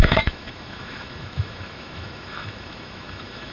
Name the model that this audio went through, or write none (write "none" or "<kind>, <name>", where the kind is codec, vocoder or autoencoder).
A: autoencoder, DAC-VAE